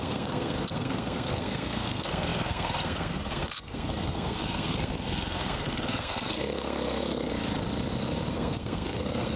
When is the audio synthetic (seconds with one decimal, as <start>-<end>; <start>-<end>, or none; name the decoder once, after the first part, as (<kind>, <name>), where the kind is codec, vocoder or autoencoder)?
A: 0.0-7.3 (codec, SNAC); 8.3-9.4